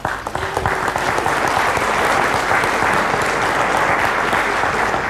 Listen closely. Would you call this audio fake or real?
real